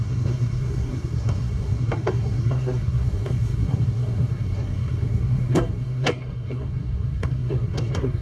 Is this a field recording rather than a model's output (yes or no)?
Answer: no